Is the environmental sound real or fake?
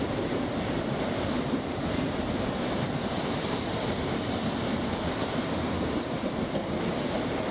fake